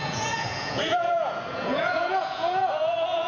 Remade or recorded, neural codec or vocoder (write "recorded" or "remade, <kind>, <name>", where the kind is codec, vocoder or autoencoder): remade, vocoder, Vocos